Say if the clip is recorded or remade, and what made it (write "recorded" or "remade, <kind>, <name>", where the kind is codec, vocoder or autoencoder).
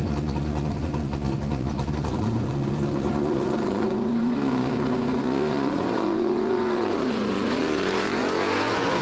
remade, vocoder, Vocos